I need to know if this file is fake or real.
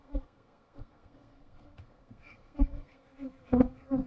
fake